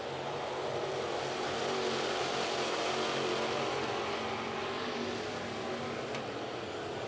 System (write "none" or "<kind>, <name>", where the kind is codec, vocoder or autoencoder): none